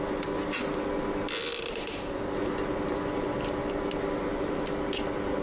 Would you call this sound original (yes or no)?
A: yes